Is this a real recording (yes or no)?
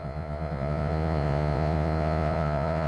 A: no